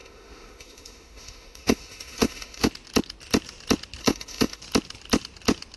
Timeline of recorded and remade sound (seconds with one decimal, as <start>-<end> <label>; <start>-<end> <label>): 0.0-2.7 remade; 2.7-4.0 recorded; 4.0-4.6 remade; 4.6-5.8 recorded